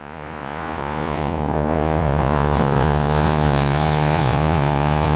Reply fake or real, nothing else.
fake